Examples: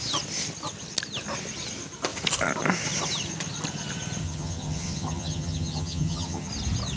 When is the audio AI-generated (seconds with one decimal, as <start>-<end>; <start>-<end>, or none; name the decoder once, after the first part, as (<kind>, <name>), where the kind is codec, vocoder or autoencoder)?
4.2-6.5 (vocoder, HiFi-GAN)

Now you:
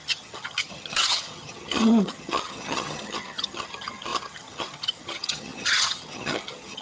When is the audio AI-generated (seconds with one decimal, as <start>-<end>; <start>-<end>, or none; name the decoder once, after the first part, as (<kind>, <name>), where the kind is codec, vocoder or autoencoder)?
0.0-6.8 (vocoder, HiFi-GAN)

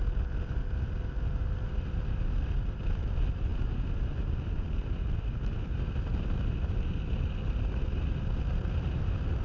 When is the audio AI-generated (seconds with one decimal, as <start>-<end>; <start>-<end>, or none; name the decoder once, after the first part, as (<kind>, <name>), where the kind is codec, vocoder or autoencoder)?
none